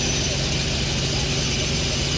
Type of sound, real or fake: real